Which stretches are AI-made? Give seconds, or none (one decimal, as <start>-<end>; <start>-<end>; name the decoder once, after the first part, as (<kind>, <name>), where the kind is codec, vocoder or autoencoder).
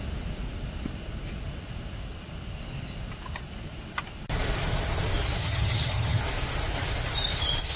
5.4-6.2 (vocoder, HiFi-GAN)